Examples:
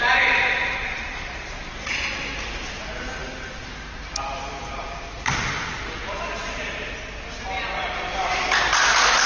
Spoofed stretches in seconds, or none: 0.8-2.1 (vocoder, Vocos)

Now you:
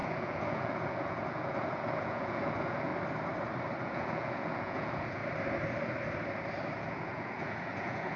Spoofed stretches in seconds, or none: 0.0-2.9 (vocoder, Vocos); 3.8-5.2; 6.8-8.2

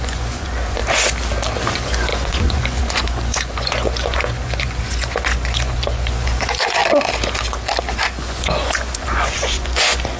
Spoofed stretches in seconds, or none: 0.0-0.8 (vocoder, Vocos); 1.7-6.8; 7.8-10.2

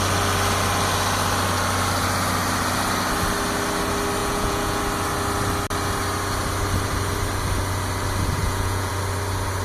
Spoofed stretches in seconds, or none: 4.2-4.8 (vocoder, Vocos); 8.4-8.9

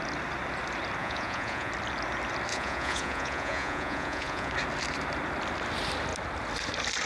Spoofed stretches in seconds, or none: 1.0-1.7 (vocoder, Vocos); 2.5-4.5

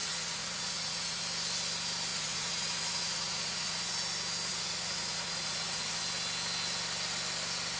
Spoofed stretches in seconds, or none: 0.0-1.2 (vocoder, Vocos); 2.1-3.9; 4.5-6.0

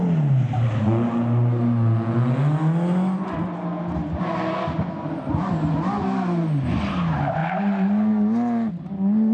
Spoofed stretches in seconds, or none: none

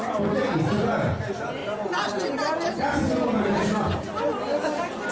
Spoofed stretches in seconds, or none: none